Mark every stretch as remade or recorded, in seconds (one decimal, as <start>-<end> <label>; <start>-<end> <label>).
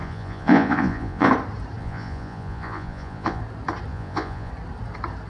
0.0-1.3 remade; 1.3-1.8 recorded; 1.8-3.4 remade; 3.4-3.9 recorded; 3.9-4.5 remade; 4.5-5.3 recorded